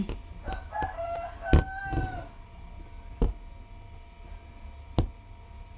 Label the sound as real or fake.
real